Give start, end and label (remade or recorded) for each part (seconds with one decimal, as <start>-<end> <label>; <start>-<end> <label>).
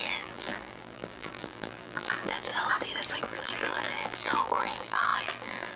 0.0-2.5 remade; 2.5-3.2 recorded; 3.2-5.8 remade